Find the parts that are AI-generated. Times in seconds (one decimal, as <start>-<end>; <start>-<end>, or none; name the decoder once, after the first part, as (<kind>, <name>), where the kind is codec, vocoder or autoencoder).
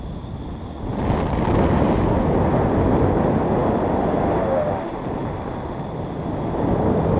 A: none